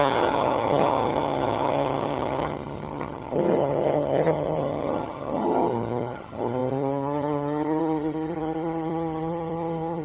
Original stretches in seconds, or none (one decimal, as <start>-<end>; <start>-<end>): none

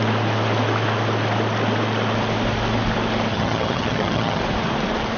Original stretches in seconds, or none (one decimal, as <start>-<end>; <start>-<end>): 0.0-3.3; 4.4-5.2